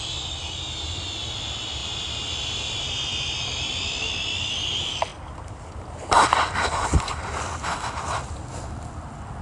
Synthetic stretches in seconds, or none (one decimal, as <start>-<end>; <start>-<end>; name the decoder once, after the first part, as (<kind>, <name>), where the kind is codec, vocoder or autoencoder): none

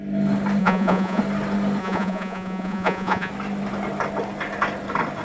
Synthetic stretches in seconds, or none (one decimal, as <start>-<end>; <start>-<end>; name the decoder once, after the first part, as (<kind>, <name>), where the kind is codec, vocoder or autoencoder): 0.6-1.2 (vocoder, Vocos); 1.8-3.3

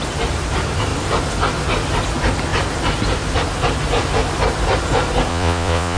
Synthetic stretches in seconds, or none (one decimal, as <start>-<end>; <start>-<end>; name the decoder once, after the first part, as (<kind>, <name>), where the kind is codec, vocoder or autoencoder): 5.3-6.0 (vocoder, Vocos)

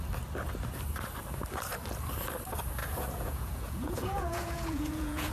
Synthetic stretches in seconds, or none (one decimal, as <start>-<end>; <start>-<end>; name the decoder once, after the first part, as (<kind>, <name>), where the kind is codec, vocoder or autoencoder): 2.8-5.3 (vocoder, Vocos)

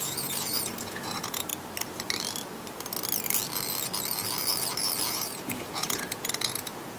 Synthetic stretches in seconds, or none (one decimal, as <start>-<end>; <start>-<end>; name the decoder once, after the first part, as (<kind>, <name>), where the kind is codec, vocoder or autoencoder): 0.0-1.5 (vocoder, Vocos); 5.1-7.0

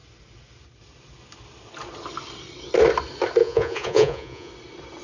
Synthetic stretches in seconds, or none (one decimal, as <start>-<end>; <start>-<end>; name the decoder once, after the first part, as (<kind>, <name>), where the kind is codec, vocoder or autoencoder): 3.4-4.5 (vocoder, Vocos)

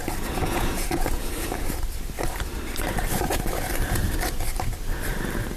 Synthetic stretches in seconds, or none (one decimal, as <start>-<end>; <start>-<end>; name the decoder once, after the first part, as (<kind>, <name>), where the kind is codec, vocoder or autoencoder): 0.4-1.3 (vocoder, Vocos)

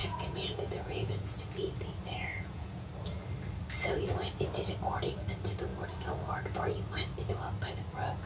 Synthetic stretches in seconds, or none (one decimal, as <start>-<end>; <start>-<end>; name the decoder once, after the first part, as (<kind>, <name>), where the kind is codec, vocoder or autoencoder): 0.0-1.4 (vocoder, Vocos); 2.3-2.9